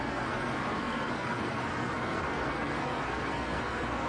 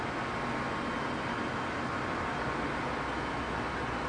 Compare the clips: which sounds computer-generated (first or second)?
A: first